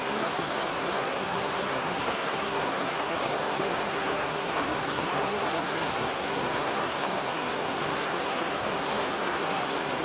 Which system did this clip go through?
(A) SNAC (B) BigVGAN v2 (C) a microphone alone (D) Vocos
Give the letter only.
A